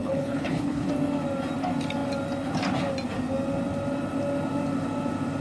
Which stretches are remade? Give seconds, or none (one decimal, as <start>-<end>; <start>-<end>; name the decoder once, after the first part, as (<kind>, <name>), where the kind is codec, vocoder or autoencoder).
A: 0.0-0.9 (codec, HILCodec)